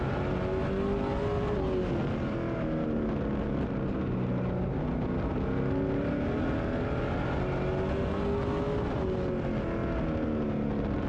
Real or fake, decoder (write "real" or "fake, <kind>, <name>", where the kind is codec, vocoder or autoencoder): real